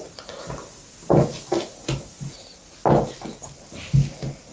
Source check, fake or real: real